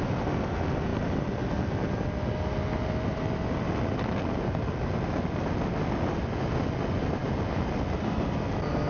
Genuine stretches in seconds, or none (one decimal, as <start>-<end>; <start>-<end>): 0.0-8.9